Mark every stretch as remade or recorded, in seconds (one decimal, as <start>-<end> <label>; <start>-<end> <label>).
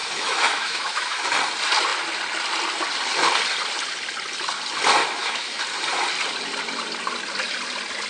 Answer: 0.0-1.3 remade; 1.3-5.0 recorded; 5.0-5.6 remade; 5.6-8.1 recorded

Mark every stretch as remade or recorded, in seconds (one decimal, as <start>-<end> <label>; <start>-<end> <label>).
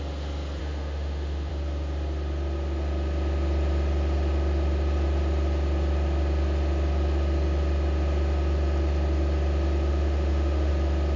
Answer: 0.0-0.6 recorded; 0.6-1.5 remade; 1.5-9.9 recorded; 9.9-10.7 remade; 10.7-11.2 recorded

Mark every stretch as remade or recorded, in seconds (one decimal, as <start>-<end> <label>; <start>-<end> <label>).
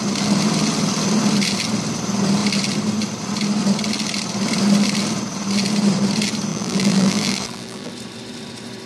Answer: 0.0-6.5 recorded; 6.5-7.9 remade; 7.9-8.9 recorded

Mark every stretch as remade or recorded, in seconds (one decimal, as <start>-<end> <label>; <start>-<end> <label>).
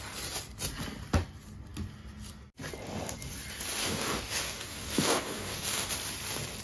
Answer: 0.0-3.8 recorded; 3.8-5.9 remade; 5.9-6.6 recorded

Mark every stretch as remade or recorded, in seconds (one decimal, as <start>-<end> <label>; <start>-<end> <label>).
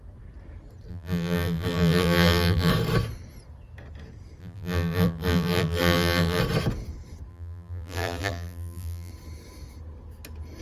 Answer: 0.0-0.9 recorded; 0.9-2.7 remade; 2.7-4.4 recorded; 4.4-6.4 remade; 6.4-7.3 recorded; 7.3-9.1 remade; 9.1-10.6 recorded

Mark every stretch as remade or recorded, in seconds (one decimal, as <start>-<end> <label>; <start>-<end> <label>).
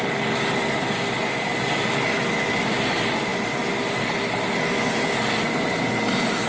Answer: 0.0-6.5 recorded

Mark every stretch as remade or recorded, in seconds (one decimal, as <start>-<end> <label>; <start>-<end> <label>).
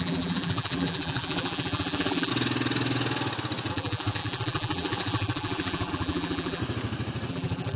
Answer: 0.0-2.3 remade; 2.3-3.7 recorded; 3.7-6.6 remade; 6.6-7.3 recorded; 7.3-7.8 remade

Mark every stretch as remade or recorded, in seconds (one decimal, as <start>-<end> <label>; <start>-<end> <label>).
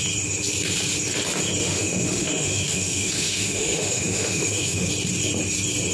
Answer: 0.0-1.6 recorded; 1.6-4.9 remade; 4.9-5.9 recorded